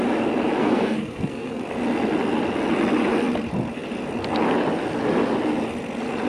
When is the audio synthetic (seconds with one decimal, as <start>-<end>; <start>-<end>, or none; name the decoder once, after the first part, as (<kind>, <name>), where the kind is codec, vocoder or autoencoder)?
0.6-1.6 (codec, SNAC)